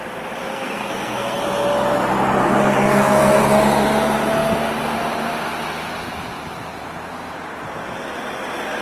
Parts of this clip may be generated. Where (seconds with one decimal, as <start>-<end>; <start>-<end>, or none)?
0.5-1.4; 2.4-3.4